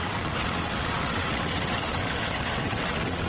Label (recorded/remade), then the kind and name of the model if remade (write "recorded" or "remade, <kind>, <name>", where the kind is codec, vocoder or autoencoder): remade, vocoder, WaveNeXt